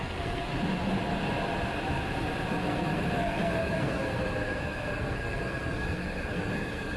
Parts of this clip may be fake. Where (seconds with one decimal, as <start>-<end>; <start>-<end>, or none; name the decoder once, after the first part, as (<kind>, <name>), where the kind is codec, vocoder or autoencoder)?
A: 0.0-0.5 (codec, SNAC); 2.6-7.0